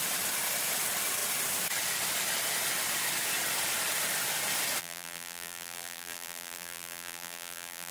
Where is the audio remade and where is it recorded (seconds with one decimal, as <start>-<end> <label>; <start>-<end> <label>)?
0.0-4.8 recorded; 4.8-7.9 remade